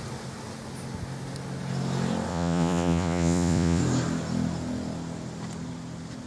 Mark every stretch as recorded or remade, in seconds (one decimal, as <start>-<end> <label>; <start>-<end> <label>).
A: 0.0-2.3 recorded; 2.3-3.8 remade; 3.8-6.3 recorded